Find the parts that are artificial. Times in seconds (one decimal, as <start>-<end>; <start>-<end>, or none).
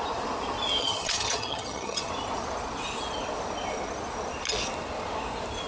0.8-2.1